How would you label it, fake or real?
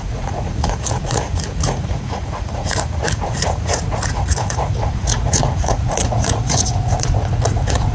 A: fake